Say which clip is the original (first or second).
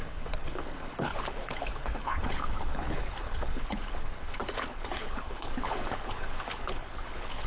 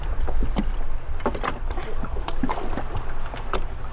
second